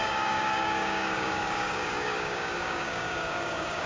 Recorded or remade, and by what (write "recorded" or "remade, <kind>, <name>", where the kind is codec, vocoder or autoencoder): remade, codec, DAC